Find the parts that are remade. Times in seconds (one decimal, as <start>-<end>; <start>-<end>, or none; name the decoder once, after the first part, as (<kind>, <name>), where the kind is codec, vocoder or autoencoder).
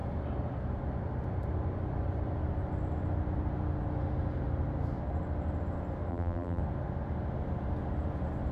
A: 6.1-6.6 (vocoder, BigVGAN v2)